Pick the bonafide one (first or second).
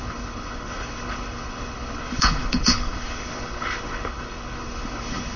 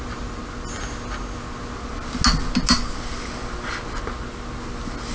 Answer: second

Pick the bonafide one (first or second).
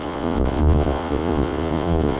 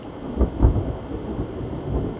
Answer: second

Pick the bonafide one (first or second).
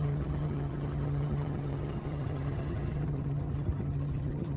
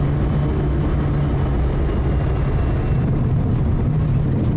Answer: second